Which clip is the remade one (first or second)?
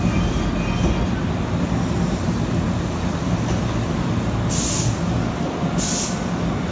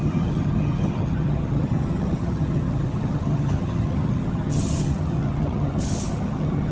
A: second